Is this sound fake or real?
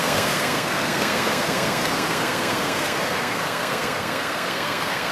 fake